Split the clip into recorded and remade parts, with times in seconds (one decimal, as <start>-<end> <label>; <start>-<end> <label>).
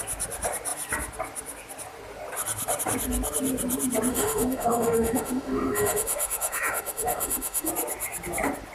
0.0-4.1 recorded; 4.1-7.7 remade; 7.7-8.7 recorded